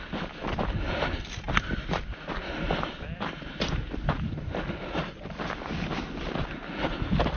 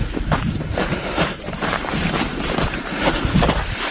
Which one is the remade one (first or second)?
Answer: second